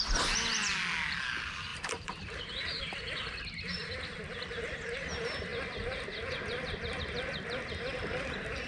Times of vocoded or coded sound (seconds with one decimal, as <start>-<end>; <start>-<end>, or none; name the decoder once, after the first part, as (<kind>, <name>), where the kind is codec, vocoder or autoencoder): 1.7-2.8 (vocoder, BigVGAN v2)